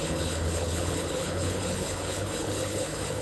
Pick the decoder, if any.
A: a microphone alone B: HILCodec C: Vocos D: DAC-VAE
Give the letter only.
B